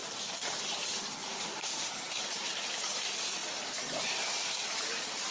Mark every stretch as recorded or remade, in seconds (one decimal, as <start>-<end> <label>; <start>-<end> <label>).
0.0-1.3 recorded; 1.3-1.9 remade; 1.9-5.3 recorded